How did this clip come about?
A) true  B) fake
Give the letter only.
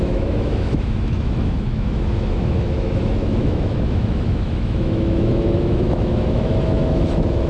B